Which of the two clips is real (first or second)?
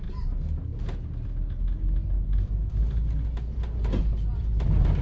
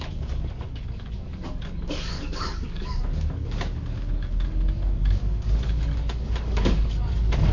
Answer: first